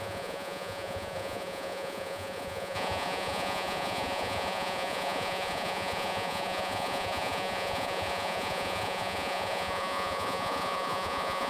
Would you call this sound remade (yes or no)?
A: yes